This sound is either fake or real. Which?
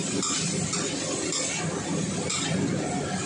real